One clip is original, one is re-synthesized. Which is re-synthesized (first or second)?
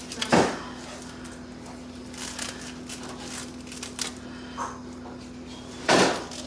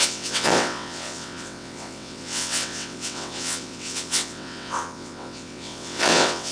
second